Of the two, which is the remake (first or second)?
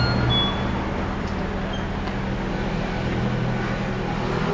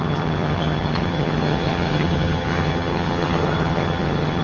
second